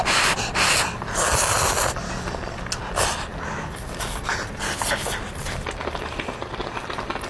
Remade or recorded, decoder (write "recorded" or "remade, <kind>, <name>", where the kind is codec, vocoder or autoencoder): recorded